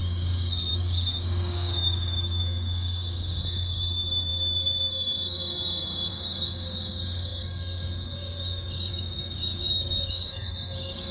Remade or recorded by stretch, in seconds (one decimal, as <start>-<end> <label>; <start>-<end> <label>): 0.0-11.1 remade